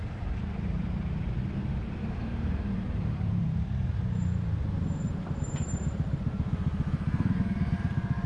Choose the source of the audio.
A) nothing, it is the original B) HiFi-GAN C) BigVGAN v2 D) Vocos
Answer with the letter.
C